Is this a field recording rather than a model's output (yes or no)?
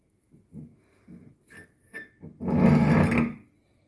yes